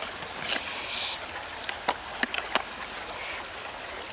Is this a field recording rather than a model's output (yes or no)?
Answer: yes